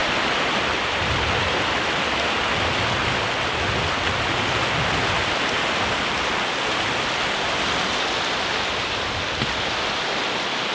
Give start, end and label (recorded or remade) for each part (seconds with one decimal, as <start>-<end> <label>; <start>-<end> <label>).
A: 0.0-10.7 recorded